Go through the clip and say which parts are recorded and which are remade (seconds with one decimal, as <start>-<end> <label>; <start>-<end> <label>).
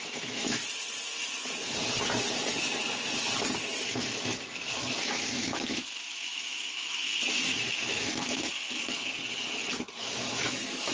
0.0-0.6 remade; 0.6-5.0 recorded; 5.0-8.5 remade; 8.5-10.0 recorded; 10.0-10.9 remade